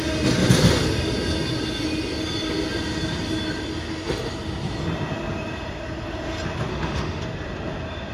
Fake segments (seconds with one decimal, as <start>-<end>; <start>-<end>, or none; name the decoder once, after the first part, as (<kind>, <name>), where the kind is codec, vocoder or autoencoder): 6.7-7.2 (autoencoder, DAC-VAE)